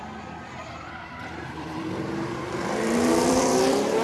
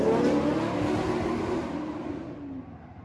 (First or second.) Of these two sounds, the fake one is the first